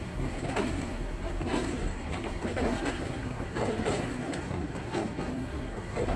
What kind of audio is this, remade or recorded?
remade